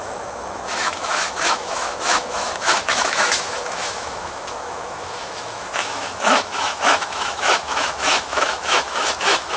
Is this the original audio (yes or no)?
no